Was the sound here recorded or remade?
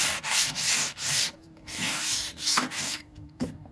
remade